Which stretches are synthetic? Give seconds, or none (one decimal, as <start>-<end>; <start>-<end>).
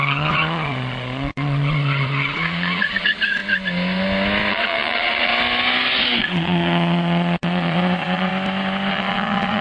0.0-3.4; 4.5-5.3; 6.2-8.3; 8.9-9.6